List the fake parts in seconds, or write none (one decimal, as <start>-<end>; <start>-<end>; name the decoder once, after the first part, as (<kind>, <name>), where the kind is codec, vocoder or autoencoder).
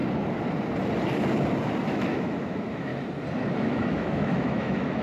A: 1.9-2.9 (autoencoder, DAC-VAE); 3.7-5.0